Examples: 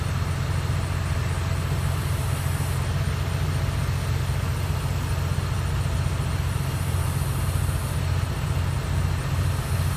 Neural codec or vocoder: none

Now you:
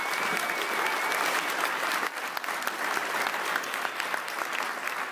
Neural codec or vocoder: none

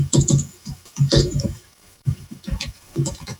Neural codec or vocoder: autoencoder, DAC-VAE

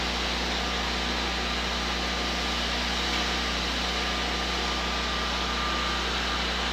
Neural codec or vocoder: none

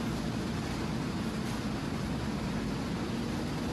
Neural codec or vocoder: none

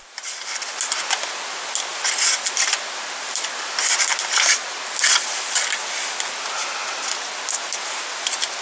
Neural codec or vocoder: none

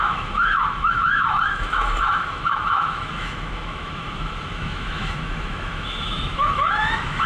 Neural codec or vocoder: autoencoder, DAC-VAE